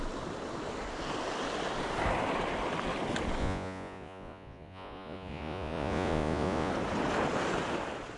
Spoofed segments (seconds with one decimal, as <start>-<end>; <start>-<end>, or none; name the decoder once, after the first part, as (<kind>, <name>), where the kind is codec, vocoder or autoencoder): 3.4-6.7 (vocoder, Vocos)